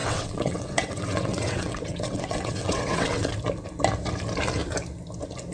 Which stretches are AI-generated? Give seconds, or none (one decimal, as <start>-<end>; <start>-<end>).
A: 0.0-3.3